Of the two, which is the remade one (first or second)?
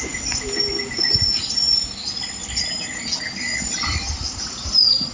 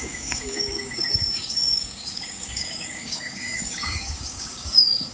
second